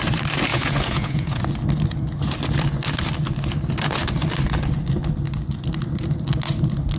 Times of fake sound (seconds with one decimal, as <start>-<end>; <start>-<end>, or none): 0.5-1.4